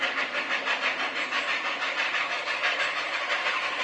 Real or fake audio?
real